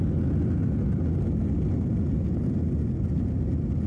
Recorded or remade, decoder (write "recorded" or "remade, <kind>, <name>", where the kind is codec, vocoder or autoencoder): recorded